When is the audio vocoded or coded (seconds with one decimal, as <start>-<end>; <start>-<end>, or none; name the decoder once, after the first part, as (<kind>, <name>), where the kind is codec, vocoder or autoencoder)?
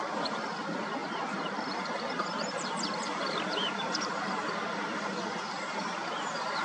1.0-4.1 (vocoder, BigVGAN v2)